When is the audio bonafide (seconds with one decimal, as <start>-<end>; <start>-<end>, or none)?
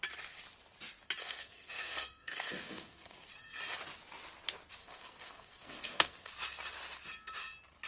0.0-1.2; 3.3-4.8; 6.3-7.9